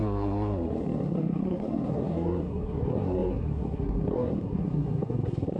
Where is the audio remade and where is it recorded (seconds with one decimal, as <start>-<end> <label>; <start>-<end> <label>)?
0.0-5.6 remade